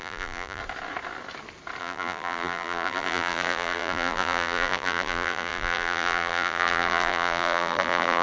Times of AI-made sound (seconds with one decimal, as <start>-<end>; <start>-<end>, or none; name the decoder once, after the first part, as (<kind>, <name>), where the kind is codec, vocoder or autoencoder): 0.0-0.6 (vocoder, BigVGAN v2); 1.8-8.2